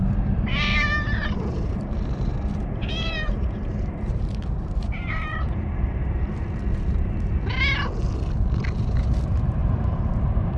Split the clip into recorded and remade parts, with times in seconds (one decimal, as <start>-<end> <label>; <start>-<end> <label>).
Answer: 0.0-6.3 remade; 6.3-8.7 recorded; 8.7-10.6 remade

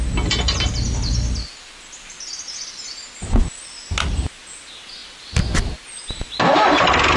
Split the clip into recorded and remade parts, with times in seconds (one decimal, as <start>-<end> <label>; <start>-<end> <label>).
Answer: 0.0-7.2 recorded

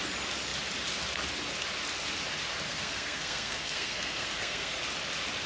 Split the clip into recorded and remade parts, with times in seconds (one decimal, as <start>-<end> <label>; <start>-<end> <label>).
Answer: 0.0-2.7 recorded; 2.7-4.8 remade; 4.8-5.5 recorded

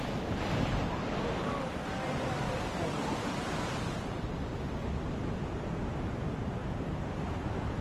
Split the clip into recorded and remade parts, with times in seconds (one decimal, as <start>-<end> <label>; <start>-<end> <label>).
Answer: 0.0-5.2 recorded; 5.2-6.1 remade; 6.1-6.6 recorded; 6.6-7.8 remade

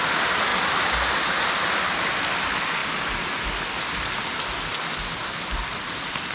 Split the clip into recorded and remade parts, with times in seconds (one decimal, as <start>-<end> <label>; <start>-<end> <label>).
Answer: 0.0-6.3 recorded

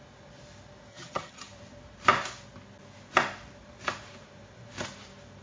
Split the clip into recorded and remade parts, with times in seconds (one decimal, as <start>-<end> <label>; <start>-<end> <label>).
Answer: 0.0-0.9 recorded; 0.9-1.5 remade; 1.5-5.4 recorded